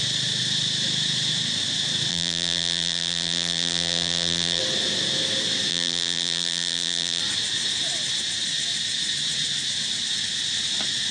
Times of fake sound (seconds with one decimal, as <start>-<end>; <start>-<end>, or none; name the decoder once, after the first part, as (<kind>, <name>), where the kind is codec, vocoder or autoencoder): 2.1-4.6 (vocoder, BigVGAN v2); 5.7-7.2